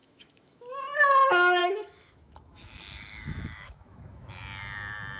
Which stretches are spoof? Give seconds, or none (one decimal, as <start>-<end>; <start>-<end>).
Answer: 0.0-0.8; 1.6-4.3